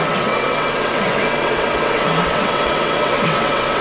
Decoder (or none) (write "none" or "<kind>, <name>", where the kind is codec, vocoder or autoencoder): vocoder, WaveNeXt